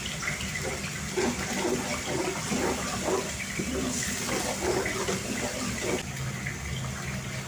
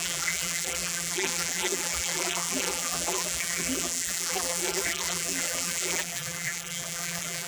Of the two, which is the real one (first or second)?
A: first